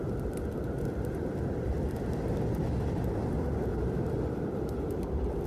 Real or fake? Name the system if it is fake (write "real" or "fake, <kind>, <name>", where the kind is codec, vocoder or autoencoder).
fake, vocoder, BigVGAN v2